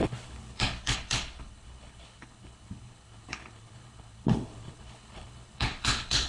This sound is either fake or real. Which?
fake